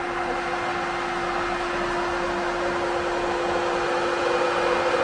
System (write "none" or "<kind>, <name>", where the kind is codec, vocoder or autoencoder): none